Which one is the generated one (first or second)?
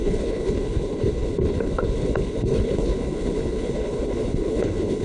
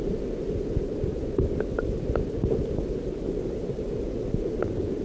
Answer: first